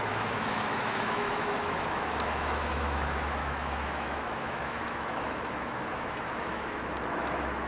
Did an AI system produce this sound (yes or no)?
yes